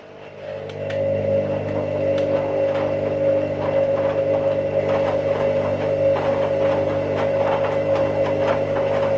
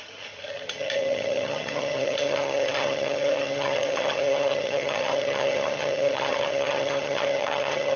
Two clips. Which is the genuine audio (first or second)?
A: first